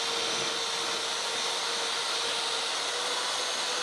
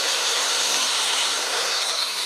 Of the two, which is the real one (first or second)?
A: first